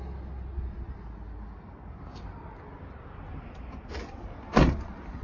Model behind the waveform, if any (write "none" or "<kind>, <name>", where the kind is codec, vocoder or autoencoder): none